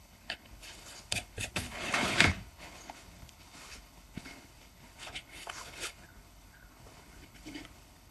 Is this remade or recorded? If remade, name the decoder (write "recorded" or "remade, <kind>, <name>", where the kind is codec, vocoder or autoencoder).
remade, codec, HILCodec